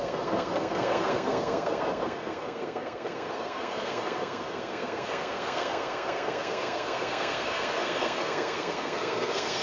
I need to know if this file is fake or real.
fake